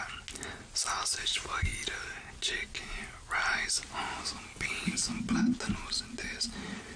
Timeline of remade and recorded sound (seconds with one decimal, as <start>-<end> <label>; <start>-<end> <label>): 0.0-4.5 recorded; 4.5-5.1 remade; 5.1-7.0 recorded